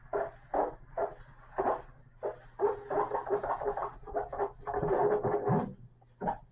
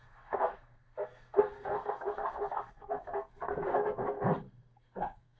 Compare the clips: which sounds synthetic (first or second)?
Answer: second